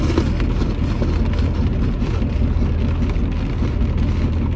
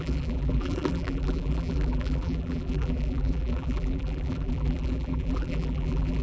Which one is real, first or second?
first